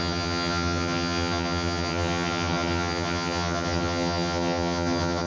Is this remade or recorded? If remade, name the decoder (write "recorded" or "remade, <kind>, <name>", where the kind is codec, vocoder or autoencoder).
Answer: remade, vocoder, HiFi-GAN